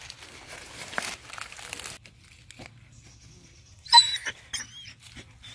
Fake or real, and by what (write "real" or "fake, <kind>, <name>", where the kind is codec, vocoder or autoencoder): real